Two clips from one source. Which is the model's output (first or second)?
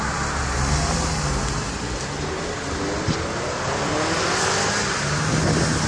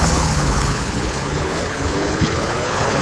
second